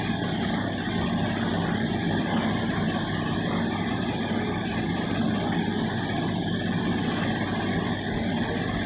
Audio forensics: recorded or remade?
recorded